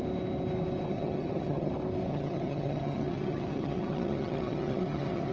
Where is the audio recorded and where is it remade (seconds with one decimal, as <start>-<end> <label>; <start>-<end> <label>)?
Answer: 0.0-0.9 recorded; 0.9-1.7 remade; 1.7-2.1 recorded; 2.1-5.3 remade